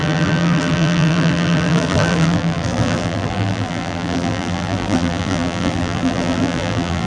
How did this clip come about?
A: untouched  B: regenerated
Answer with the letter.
B